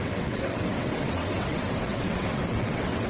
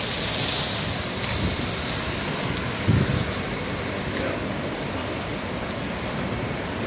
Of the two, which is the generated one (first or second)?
first